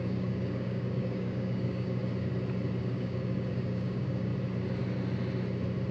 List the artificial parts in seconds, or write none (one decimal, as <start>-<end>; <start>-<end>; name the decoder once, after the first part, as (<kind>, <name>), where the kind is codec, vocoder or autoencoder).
0.0-2.0 (codec, DAC); 2.8-4.3